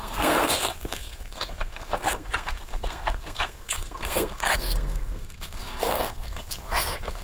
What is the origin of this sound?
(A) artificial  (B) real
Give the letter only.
A